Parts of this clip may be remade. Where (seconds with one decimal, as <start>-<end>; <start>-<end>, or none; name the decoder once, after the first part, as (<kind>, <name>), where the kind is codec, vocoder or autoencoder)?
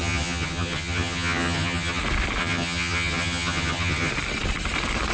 0.0-2.0 (vocoder, HiFi-GAN); 2.4-4.1